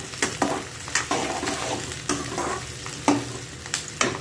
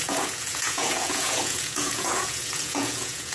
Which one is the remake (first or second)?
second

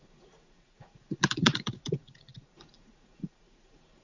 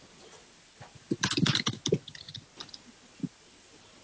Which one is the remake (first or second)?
first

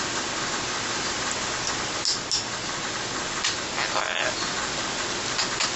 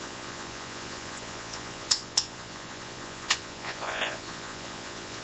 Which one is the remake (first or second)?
second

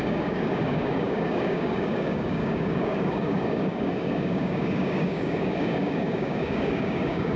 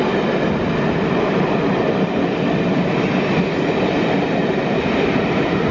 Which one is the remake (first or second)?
first